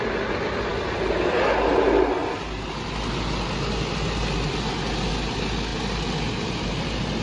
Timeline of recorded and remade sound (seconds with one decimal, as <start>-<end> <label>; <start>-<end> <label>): 0.0-7.2 recorded